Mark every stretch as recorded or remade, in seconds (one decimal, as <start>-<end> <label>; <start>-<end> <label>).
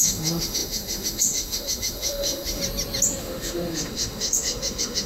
0.0-2.6 remade; 2.6-3.2 recorded; 3.2-5.1 remade